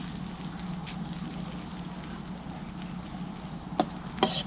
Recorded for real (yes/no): yes